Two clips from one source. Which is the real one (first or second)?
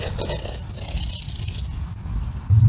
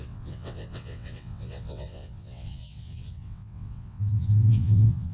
first